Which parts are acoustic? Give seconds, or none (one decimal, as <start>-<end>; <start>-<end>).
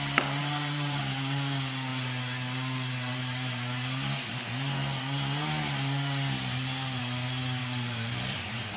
0.0-0.4; 1.0-7.6